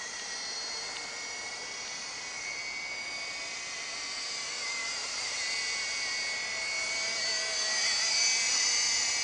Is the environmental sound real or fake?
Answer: real